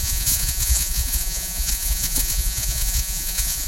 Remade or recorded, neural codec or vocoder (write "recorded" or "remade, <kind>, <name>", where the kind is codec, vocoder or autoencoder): remade, vocoder, Vocos